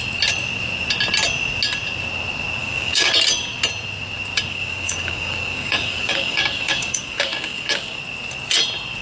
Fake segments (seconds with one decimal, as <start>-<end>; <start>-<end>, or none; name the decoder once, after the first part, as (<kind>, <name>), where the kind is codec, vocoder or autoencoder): 2.6-3.1 (codec, DAC); 4.5-8.0